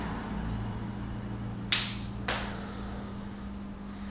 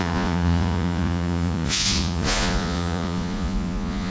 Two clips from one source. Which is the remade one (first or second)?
second